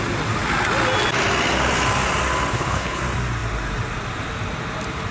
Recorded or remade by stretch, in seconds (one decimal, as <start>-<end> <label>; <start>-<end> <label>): 0.0-2.5 recorded; 2.5-3.0 remade; 3.0-5.1 recorded